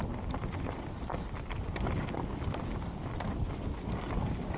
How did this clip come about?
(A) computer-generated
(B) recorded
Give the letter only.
B